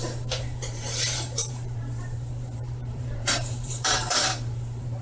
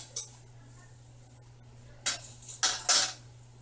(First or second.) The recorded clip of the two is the second